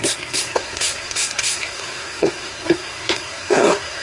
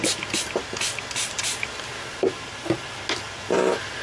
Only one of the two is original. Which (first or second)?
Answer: second